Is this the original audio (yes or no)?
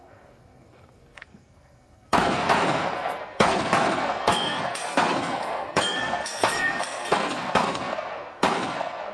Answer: no